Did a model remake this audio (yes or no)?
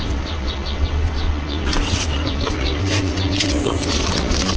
yes